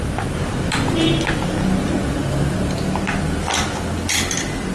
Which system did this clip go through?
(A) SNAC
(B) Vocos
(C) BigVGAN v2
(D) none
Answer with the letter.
D